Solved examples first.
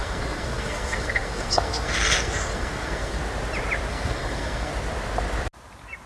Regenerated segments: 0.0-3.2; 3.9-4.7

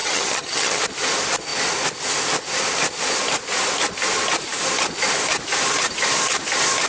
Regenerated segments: 0.0-0.8

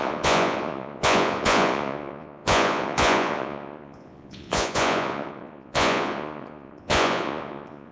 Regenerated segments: 0.0-7.9

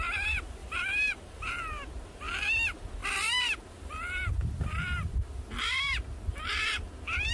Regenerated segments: 0.6-1.5

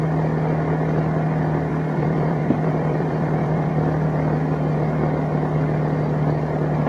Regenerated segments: 1.7-3.7